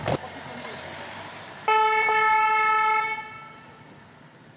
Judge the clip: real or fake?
real